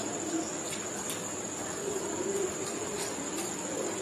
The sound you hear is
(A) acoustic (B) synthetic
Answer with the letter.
A